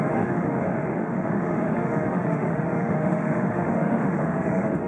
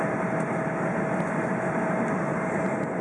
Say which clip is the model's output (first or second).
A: first